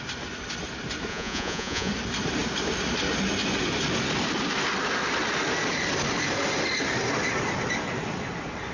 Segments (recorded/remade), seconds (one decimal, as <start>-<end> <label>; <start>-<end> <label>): 0.0-1.1 recorded; 1.1-1.9 remade; 1.9-8.7 recorded